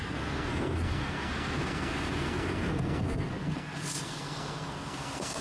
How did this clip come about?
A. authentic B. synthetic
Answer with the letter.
B